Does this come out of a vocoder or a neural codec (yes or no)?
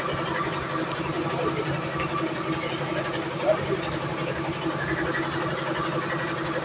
no